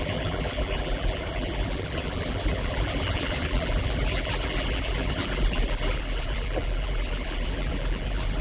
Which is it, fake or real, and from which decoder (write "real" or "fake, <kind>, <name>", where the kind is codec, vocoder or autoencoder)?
fake, vocoder, BigVGAN v2